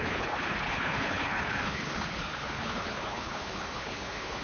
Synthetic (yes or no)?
yes